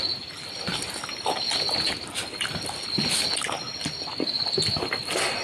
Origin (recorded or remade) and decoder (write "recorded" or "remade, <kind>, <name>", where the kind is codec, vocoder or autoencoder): recorded